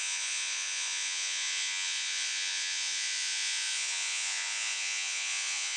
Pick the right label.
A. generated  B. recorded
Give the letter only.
A